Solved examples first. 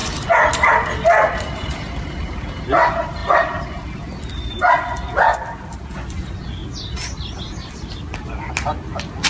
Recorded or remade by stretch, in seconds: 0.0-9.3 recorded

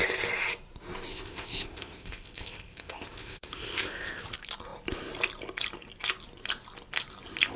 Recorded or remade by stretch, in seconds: 0.0-1.1 recorded; 1.1-4.2 remade; 4.2-7.6 recorded

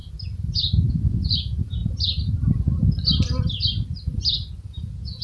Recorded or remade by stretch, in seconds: 0.0-0.9 recorded; 0.9-1.8 remade; 1.8-4.7 recorded; 4.7-5.2 remade